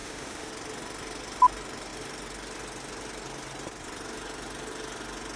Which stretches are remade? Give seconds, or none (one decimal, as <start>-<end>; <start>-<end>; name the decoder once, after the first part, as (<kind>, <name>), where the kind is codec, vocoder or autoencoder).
0.0-0.5 (autoencoder, DAC-VAE)